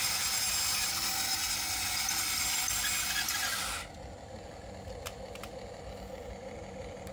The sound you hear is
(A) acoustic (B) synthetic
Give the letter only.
A